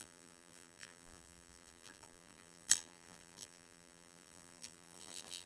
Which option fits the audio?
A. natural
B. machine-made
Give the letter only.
B